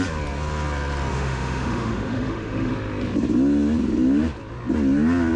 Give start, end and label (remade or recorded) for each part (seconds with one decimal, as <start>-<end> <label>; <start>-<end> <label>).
0.0-1.1 recorded; 1.1-2.7 remade; 2.7-5.4 recorded